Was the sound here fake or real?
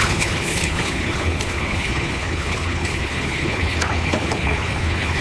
fake